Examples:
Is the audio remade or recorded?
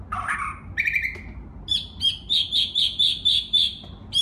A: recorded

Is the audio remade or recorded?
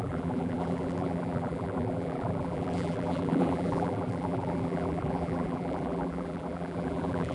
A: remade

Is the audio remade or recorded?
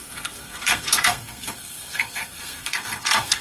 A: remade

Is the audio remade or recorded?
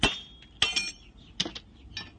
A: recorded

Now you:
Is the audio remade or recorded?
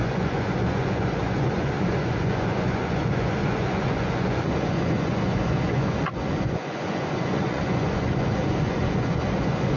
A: remade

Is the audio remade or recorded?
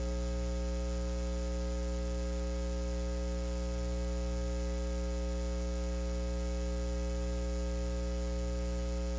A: recorded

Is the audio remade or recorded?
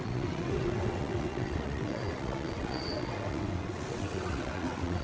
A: remade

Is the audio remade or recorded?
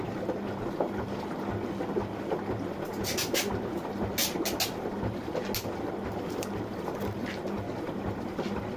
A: recorded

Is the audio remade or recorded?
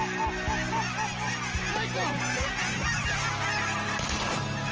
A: recorded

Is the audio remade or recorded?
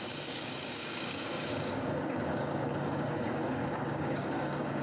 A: remade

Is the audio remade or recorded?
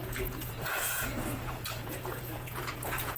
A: remade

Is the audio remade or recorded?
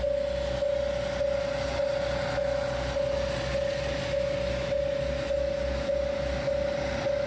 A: recorded